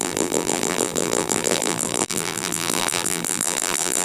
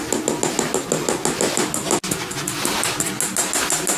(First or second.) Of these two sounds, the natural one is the second